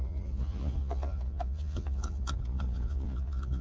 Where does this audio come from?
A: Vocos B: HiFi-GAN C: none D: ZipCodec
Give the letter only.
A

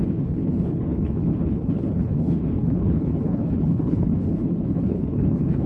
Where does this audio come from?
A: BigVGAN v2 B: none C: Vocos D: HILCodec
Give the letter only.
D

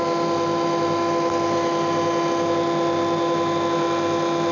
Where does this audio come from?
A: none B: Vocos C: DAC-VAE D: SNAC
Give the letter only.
A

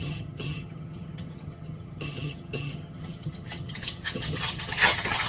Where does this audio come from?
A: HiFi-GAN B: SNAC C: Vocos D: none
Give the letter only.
A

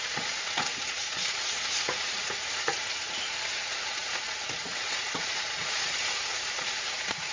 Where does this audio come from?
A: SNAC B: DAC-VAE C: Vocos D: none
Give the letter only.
C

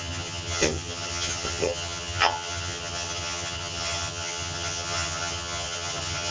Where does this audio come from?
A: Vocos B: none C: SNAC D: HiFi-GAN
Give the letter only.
D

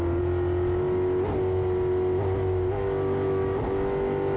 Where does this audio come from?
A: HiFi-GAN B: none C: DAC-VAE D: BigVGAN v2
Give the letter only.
B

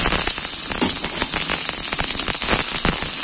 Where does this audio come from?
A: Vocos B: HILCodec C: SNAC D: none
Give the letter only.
D